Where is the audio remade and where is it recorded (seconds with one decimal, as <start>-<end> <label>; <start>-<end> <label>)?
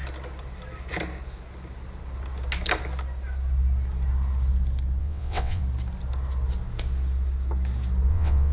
0.0-5.0 recorded; 5.0-5.6 remade; 5.6-8.1 recorded; 8.1-8.5 remade